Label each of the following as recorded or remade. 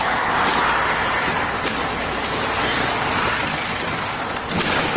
recorded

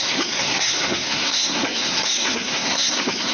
remade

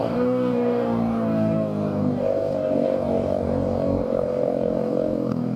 remade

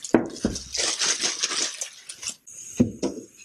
recorded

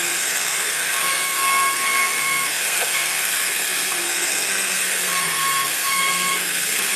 remade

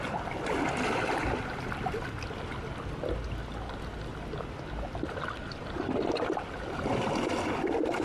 recorded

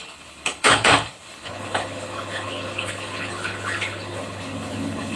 remade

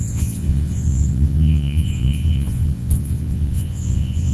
remade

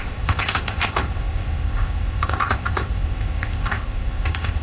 remade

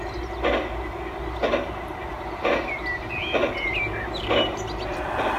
recorded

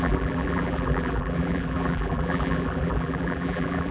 remade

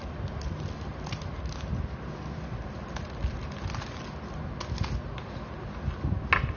recorded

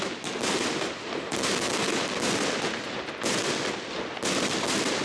recorded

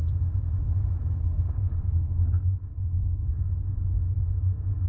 recorded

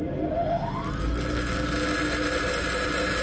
recorded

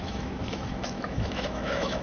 remade